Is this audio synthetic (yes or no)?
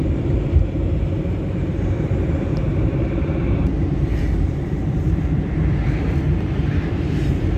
yes